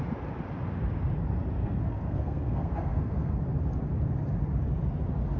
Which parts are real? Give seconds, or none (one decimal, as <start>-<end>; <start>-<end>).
0.0-1.6; 3.4-5.4